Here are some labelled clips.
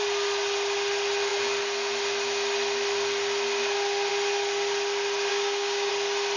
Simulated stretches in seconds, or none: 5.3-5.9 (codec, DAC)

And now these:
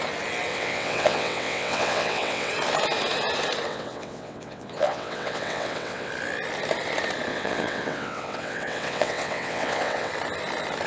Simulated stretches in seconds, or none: 0.5-2.5 (vocoder, WaveNeXt); 3.7-6.1; 7.3-10.1

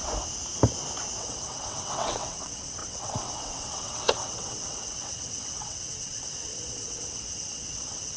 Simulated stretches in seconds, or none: 1.2-8.2 (vocoder, WaveNeXt)

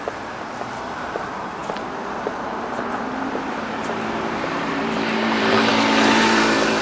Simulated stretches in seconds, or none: 1.6-5.7 (vocoder, BigVGAN v2)

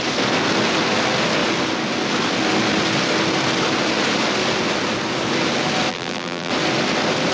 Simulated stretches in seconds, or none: 5.9-6.5 (vocoder, BigVGAN v2)

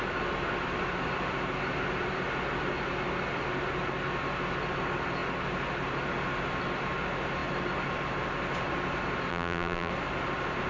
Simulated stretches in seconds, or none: 9.3-9.9 (vocoder, BigVGAN v2)